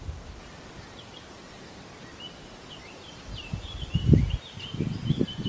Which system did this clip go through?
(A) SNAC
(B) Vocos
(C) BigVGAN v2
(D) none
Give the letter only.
D